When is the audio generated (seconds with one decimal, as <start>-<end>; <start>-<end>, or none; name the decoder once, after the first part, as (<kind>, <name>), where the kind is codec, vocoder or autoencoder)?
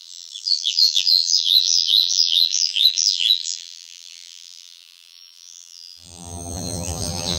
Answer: 0.0-7.4 (vocoder, BigVGAN v2)